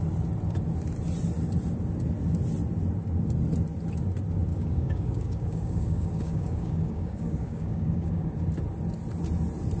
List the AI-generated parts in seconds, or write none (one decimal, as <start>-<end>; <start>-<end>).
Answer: 4.5-8.3